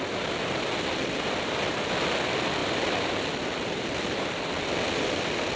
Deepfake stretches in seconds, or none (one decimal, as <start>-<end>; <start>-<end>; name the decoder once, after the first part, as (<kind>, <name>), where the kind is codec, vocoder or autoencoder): none